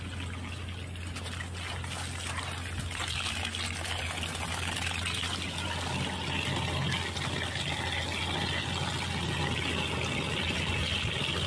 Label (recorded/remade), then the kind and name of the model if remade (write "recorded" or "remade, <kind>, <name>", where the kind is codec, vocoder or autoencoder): recorded